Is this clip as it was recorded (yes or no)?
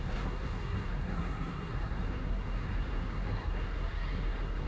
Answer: no